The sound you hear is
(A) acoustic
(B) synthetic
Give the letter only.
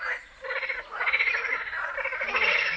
A